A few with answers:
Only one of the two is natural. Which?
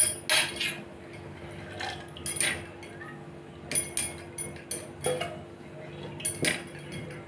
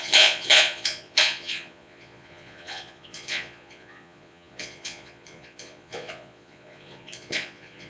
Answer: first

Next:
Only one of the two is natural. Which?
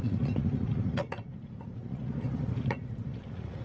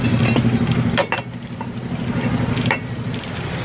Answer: second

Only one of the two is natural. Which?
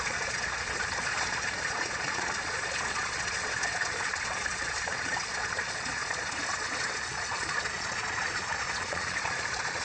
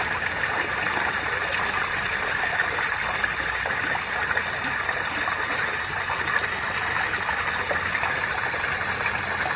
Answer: second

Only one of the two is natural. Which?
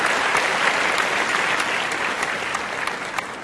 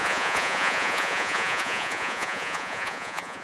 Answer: first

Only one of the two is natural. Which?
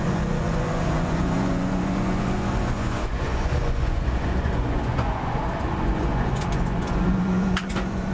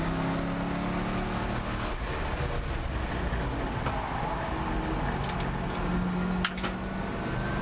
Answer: second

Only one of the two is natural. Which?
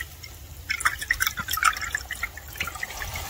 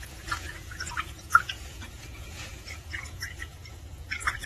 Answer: first